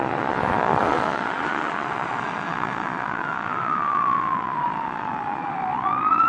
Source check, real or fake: fake